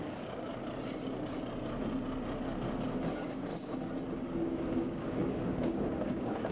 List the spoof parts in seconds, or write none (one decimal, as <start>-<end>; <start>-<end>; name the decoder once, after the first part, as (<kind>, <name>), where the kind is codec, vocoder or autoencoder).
0.0-0.5 (codec, DAC); 3.1-3.5; 4.4-6.5